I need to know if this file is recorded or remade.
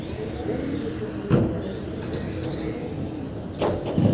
recorded